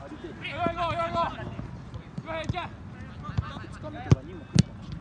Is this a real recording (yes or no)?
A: yes